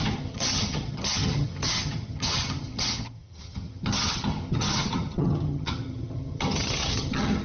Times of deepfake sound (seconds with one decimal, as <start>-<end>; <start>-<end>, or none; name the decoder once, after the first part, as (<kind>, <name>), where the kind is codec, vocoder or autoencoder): 0.0-7.4 (vocoder, HiFi-GAN)

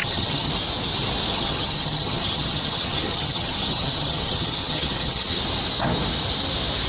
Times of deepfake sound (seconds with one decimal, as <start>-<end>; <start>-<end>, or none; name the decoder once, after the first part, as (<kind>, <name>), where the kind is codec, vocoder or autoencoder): 0.0-0.5 (vocoder, HiFi-GAN); 1.3-5.4

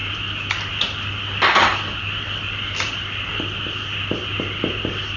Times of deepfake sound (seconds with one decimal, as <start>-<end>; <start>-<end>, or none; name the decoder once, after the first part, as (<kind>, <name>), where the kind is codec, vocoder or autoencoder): none

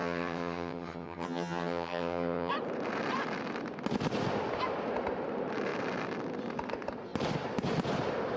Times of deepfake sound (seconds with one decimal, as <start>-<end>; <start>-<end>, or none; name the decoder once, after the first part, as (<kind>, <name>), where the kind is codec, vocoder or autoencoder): 0.0-2.5 (vocoder, HiFi-GAN)

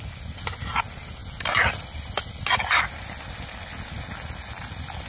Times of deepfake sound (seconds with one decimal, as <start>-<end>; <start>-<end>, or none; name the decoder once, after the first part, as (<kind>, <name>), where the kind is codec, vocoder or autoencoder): none

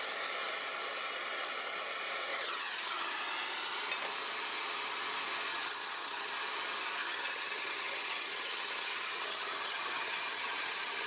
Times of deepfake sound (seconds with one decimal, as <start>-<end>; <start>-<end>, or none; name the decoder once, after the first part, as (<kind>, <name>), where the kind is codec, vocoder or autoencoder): 2.3-3.1 (vocoder, HiFi-GAN); 5.5-6.3; 7.0-11.1